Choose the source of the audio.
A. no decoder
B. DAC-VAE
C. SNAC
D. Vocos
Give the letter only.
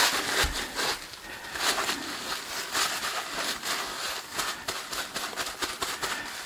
A